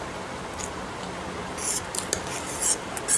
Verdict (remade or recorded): recorded